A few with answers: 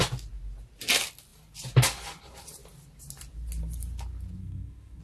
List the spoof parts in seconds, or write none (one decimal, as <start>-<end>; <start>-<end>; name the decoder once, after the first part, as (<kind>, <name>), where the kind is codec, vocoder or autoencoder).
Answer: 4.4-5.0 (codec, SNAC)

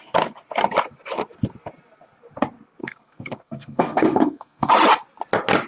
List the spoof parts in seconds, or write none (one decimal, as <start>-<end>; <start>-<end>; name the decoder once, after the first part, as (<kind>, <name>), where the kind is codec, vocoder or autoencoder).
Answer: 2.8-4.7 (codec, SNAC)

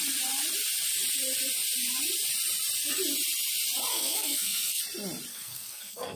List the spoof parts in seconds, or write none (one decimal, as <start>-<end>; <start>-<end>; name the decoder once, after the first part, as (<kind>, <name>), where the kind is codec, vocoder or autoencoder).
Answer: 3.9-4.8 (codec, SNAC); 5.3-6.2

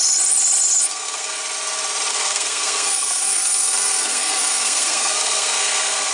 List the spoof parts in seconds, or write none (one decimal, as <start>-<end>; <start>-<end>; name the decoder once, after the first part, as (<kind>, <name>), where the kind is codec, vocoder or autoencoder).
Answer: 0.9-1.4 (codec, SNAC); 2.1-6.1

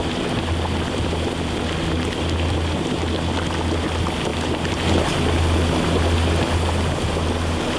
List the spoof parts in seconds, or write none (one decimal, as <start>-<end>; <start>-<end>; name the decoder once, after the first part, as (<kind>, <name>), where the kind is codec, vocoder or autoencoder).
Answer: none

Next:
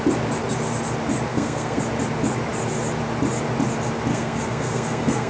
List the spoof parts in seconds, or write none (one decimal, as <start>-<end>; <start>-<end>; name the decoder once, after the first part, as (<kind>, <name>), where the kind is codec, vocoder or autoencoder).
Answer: 1.3-1.8 (codec, SNAC); 4.1-5.3